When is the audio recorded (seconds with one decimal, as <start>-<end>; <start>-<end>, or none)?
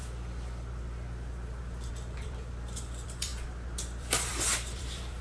0.0-1.9